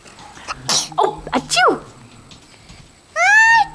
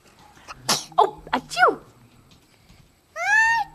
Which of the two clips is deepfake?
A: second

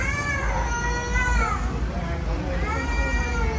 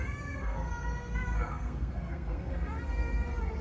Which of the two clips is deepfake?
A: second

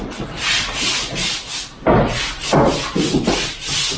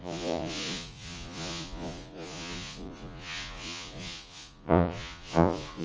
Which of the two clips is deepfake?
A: second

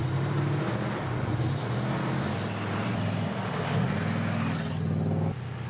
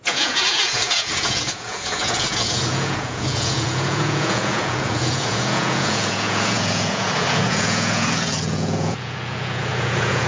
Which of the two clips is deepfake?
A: second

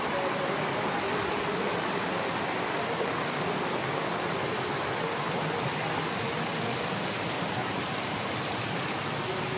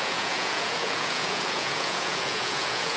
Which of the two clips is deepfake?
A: second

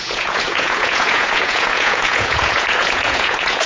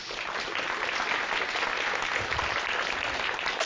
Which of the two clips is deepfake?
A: first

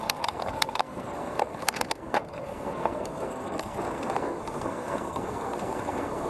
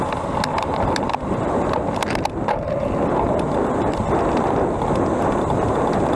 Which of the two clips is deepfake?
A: first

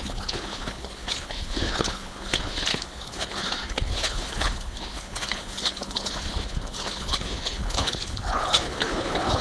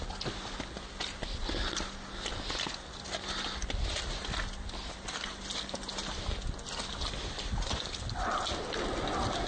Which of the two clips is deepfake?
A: first